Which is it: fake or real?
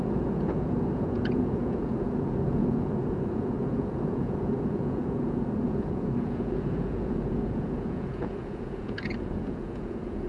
fake